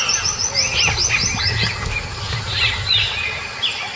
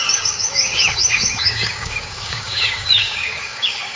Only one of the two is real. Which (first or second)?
first